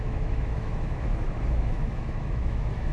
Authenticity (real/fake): fake